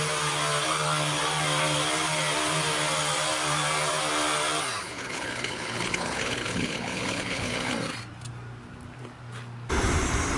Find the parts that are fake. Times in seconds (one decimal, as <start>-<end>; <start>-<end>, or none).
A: 4.8-7.7